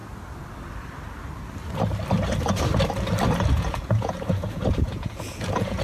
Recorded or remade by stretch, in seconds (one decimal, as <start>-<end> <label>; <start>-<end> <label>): 0.0-3.5 recorded; 3.5-5.8 remade